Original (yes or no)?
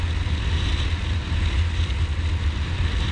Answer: yes